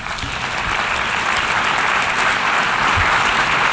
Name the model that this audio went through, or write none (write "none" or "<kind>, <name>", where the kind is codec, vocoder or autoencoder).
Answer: none